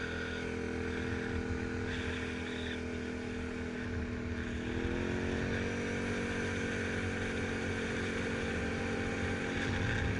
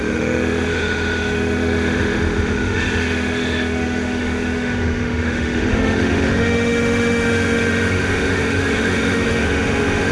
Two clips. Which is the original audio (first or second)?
first